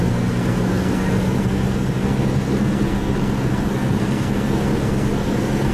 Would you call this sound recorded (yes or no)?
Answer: no